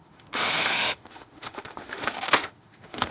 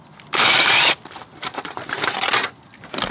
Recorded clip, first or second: second